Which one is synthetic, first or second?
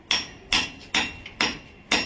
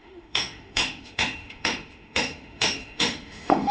second